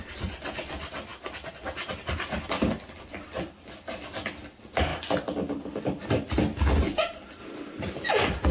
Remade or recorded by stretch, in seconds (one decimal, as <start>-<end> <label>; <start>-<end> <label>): 0.0-7.4 recorded; 7.4-8.1 remade; 8.1-8.5 recorded